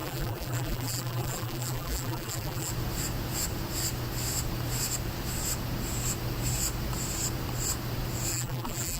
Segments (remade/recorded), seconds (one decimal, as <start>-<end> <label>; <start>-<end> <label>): 0.0-2.7 remade; 2.7-8.3 recorded; 8.3-9.0 remade